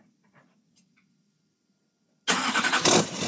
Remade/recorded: recorded